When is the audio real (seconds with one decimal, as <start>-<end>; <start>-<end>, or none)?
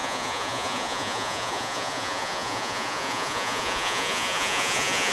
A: none